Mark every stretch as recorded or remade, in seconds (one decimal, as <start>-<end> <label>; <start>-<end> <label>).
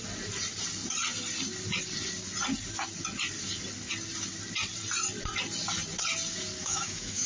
0.0-6.6 recorded; 6.6-7.3 remade